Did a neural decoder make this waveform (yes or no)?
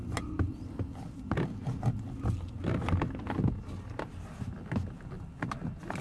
no